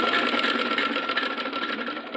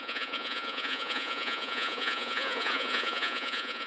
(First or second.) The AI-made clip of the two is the second